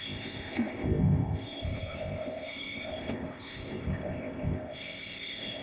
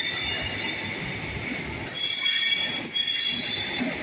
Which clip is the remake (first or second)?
first